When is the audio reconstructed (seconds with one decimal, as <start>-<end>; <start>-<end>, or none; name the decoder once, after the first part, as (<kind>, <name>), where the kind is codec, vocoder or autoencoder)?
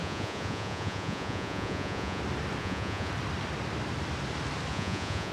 0.0-2.2 (vocoder, Vocos); 2.6-3.1; 4.7-5.3